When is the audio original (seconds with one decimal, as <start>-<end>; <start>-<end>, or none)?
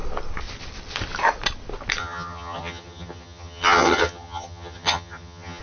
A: 0.0-2.0